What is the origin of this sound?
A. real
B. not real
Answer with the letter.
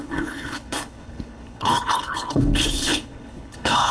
B